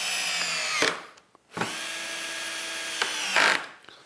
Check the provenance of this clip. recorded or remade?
recorded